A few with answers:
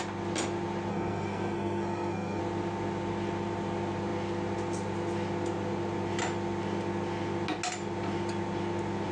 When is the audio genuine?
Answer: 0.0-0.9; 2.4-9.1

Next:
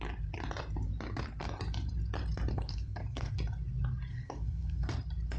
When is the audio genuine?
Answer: 0.0-2.5; 3.3-4.1; 4.9-5.4

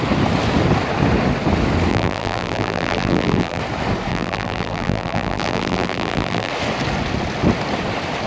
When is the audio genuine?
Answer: 0.0-1.9; 3.6-4.1; 6.5-8.3

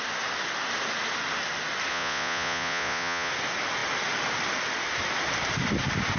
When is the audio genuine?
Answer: 0.0-1.9; 3.3-6.2

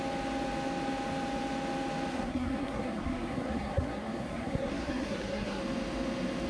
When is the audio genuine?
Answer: 0.0-2.1; 5.6-6.5

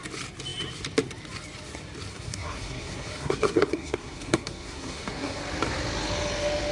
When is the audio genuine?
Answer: 0.0-2.1; 5.4-6.7

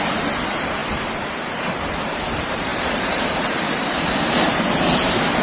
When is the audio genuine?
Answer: 0.8-1.5